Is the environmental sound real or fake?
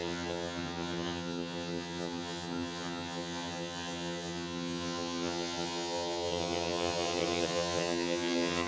fake